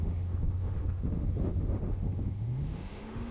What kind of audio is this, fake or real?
fake